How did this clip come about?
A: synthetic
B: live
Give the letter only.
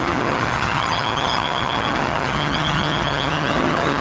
A